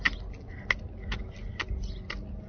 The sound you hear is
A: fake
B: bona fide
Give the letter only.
B